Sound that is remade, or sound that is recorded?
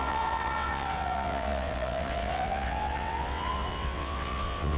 remade